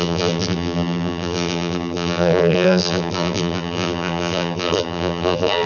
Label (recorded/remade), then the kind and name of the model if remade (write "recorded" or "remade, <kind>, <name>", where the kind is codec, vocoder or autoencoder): remade, vocoder, BigVGAN v2